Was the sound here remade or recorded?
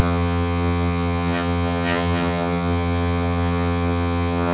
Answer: remade